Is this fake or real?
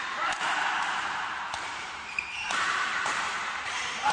fake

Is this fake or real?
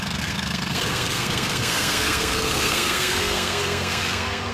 fake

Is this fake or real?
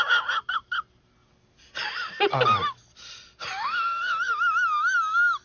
real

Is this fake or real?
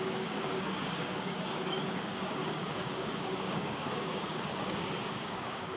fake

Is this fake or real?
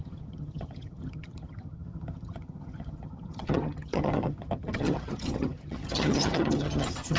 fake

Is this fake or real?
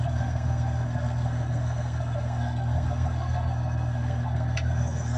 fake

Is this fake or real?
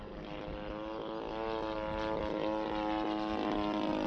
real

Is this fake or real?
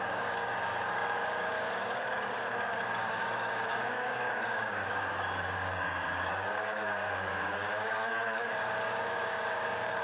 fake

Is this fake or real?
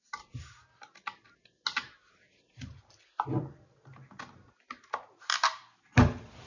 real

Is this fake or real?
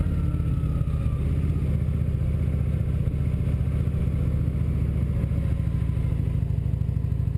real